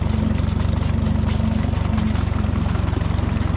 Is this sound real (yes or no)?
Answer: yes